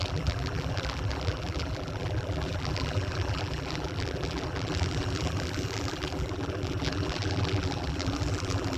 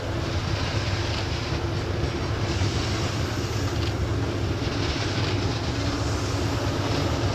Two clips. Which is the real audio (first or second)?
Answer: second